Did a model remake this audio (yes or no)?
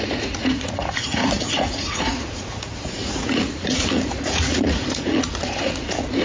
yes